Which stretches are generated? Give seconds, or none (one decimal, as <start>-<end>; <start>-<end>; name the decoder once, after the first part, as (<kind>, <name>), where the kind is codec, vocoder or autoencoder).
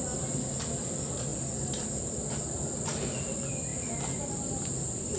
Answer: none